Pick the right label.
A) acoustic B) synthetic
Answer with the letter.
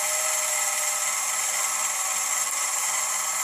A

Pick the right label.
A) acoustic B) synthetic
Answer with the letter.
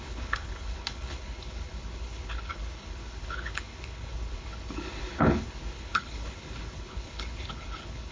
B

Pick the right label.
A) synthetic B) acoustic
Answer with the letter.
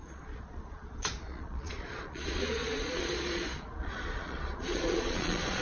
A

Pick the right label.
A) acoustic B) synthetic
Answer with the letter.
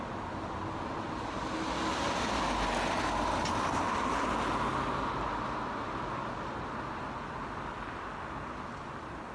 A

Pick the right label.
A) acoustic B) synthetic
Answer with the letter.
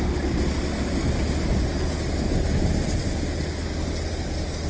A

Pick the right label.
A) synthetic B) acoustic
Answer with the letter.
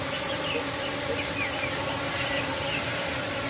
B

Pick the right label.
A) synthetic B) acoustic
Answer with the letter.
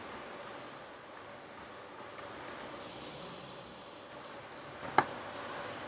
B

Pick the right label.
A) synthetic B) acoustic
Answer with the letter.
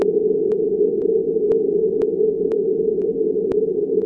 B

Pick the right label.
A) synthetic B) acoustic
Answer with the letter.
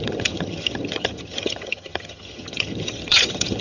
A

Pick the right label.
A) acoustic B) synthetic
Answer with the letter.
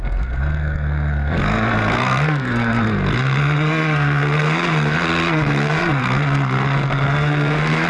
B